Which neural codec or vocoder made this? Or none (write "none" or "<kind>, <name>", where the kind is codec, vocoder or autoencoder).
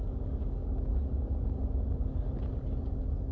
none